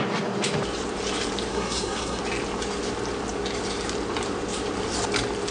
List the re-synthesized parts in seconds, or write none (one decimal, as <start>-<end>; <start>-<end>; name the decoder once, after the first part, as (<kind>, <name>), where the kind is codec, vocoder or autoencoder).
1.5-2.2 (codec, SNAC)